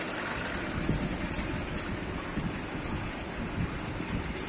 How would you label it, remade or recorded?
recorded